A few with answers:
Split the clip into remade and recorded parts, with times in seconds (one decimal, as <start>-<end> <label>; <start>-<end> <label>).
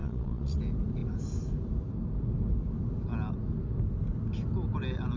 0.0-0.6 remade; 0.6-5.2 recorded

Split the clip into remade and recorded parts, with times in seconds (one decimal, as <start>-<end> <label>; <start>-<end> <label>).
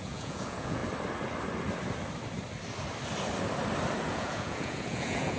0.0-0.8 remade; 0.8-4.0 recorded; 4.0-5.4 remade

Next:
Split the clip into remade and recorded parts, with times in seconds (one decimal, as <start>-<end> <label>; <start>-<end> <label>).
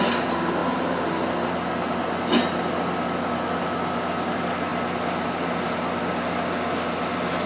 0.0-7.5 recorded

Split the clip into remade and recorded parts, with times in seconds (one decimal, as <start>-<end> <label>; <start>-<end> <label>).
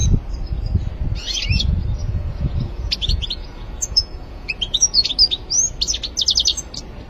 0.0-2.0 recorded; 2.0-5.1 remade; 5.1-7.1 recorded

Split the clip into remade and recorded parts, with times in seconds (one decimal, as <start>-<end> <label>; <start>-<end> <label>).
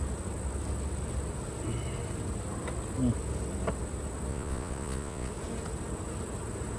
0.0-4.3 recorded; 4.3-5.3 remade; 5.3-6.8 recorded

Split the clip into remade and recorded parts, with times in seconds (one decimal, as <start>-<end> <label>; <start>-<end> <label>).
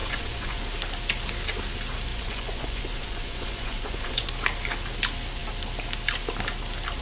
0.0-0.6 remade; 0.6-2.1 recorded; 2.1-4.3 remade; 4.3-7.0 recorded